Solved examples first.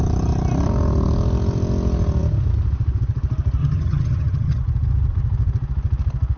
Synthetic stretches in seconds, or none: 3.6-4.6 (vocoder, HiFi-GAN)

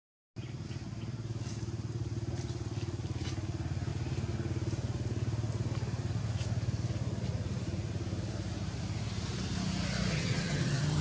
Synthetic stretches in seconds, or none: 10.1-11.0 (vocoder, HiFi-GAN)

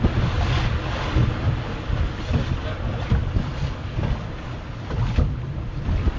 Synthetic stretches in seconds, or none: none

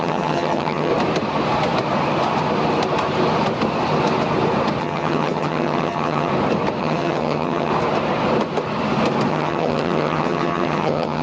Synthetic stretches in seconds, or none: 0.0-0.9 (vocoder, HiFi-GAN); 4.8-6.3; 6.8-7.7; 9.3-11.2